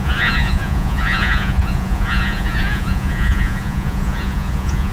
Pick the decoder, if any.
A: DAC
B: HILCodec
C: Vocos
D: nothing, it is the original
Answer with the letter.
C